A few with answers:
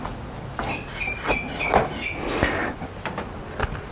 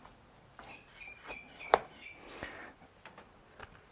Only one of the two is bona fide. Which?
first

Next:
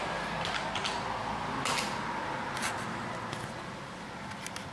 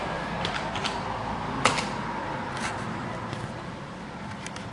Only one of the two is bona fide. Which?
first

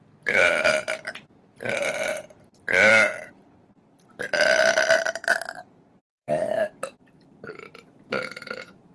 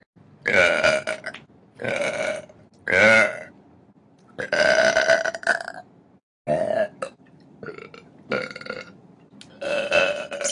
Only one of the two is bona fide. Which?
second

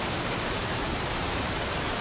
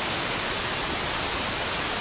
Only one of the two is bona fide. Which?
second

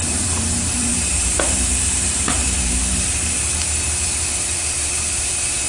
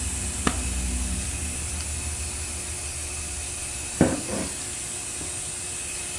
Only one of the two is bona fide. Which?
second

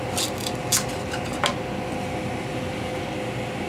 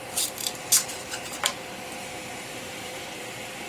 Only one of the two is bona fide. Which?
first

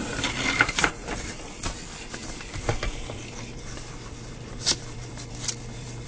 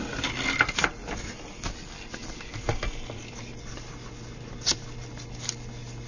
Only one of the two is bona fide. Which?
second